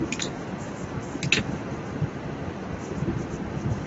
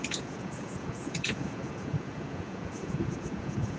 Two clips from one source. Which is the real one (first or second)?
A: first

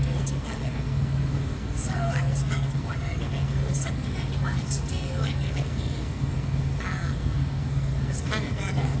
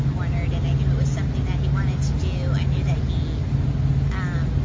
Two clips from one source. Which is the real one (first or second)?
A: second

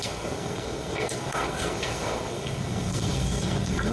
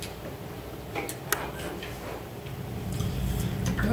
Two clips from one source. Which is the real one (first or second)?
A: second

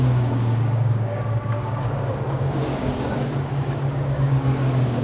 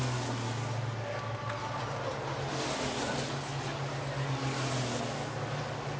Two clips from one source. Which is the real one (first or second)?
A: second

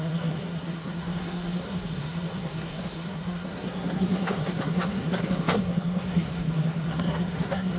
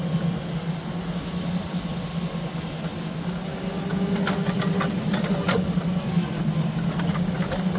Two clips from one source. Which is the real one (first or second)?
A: second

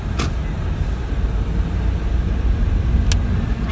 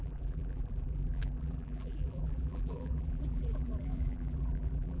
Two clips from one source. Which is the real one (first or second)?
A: first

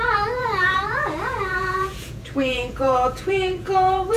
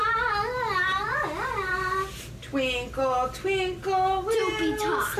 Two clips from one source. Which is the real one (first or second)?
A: second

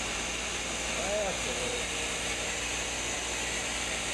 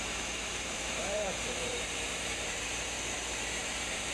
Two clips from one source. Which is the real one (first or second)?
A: first